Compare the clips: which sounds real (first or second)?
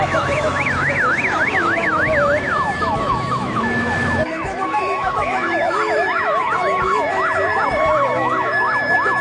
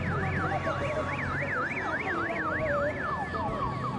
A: second